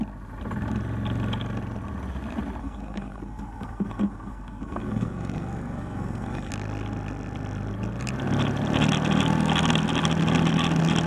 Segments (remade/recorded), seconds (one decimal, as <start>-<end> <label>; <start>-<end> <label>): 0.0-2.6 recorded; 2.6-6.5 remade; 6.5-11.1 recorded